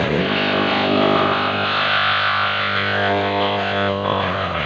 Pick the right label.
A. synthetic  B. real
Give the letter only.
A